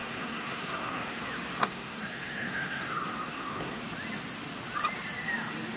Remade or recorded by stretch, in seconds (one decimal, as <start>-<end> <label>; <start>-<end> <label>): 0.0-1.2 remade; 1.2-1.6 recorded; 1.6-3.8 remade; 3.8-5.8 recorded